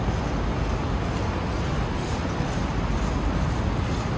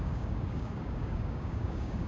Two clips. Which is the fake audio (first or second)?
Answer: second